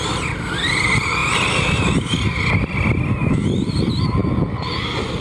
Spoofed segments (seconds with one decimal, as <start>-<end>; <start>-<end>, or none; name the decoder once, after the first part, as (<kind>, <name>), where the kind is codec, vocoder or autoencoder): none

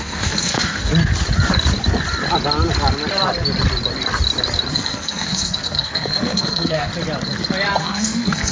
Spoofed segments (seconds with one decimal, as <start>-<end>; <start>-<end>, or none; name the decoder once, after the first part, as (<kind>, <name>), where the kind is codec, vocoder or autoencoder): 0.0-0.9 (codec, SNAC); 4.7-6.9; 7.8-8.5